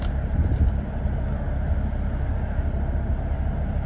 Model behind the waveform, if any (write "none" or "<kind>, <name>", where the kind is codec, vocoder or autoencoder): none